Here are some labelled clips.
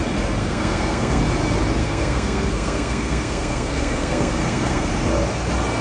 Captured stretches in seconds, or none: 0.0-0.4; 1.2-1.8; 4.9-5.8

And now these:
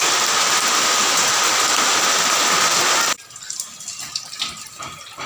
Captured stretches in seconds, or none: 0.0-5.3

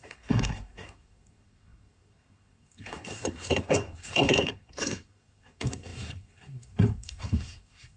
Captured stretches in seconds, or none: none

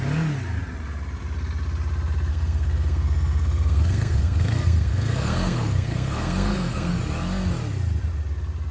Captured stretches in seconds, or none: 0.0-2.3; 7.0-8.7

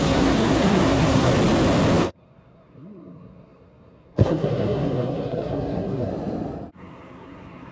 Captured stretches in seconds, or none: 1.3-2.0; 6.1-6.7

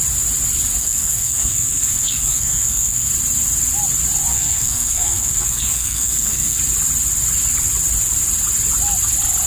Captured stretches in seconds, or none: 0.0-0.8; 3.1-4.3; 6.6-9.5

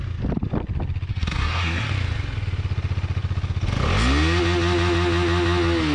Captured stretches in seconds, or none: 0.0-1.1; 1.9-5.9

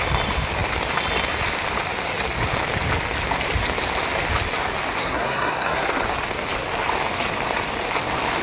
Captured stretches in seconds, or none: 0.0-5.0; 6.0-8.4